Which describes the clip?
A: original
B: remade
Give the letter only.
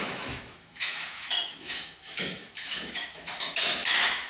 B